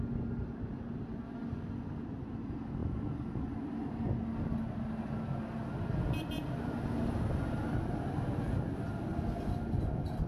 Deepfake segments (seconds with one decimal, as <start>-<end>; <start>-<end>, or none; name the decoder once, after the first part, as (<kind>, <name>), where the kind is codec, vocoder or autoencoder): 1.1-1.8 (vocoder, BigVGAN v2)